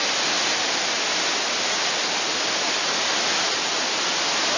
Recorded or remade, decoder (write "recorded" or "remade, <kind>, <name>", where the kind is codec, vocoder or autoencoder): recorded